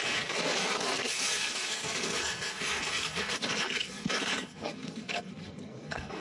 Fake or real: fake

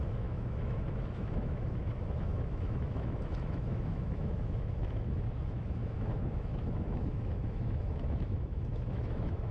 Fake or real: fake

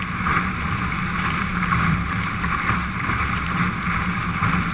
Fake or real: real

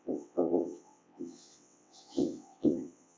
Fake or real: fake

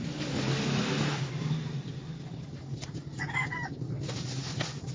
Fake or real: real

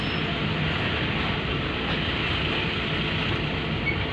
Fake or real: real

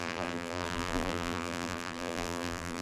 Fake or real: fake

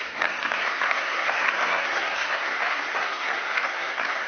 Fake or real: fake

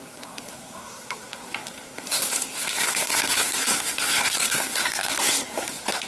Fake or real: fake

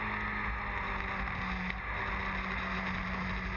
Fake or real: real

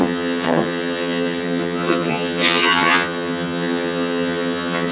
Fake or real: fake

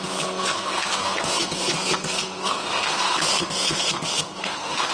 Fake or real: fake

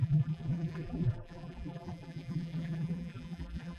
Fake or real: fake